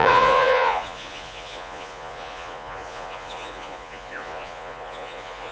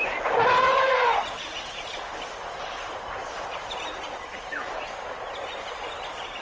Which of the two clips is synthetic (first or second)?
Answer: first